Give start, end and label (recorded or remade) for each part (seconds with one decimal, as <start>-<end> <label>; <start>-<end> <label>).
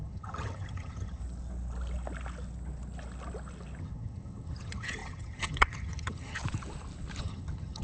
0.0-1.2 remade; 1.2-3.8 recorded; 3.8-6.4 remade; 6.4-7.2 recorded; 7.2-7.8 remade